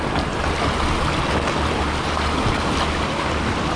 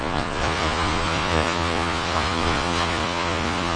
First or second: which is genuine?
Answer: first